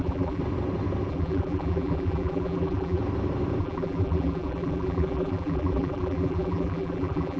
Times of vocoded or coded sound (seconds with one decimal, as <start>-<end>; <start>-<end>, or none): 0.0-0.4; 1.1-3.0; 3.6-7.4